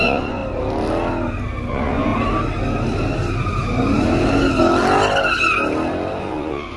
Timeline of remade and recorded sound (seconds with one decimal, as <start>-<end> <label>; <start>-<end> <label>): 0.0-0.4 remade; 0.4-1.7 recorded; 1.7-2.1 remade; 2.1-6.2 recorded; 6.2-6.8 remade